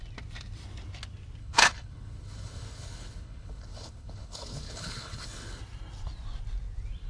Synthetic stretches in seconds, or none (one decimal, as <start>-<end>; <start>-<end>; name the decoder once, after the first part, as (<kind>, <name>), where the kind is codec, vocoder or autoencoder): 1.4-5.6 (codec, HILCodec)

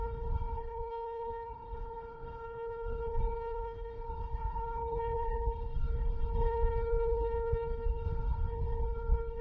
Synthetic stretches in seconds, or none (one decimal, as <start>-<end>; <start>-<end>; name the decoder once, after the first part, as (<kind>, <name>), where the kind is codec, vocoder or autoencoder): 0.0-9.4 (codec, HILCodec)